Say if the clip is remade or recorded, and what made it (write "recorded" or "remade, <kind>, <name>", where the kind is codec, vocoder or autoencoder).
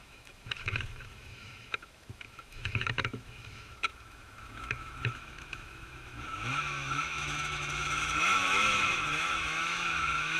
remade, autoencoder, DAC-VAE